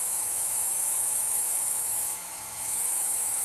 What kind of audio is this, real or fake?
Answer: fake